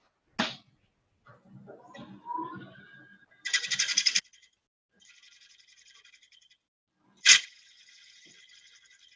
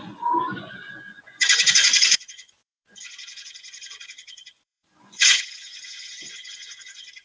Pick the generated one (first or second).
second